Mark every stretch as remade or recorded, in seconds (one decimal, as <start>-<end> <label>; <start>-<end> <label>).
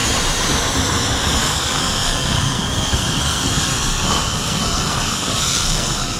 0.0-1.4 recorded; 1.4-6.2 remade